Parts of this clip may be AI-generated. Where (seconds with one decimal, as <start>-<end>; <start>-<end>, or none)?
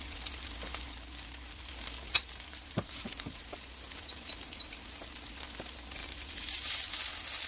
2.2-5.0; 6.0-7.0